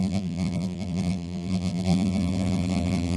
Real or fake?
fake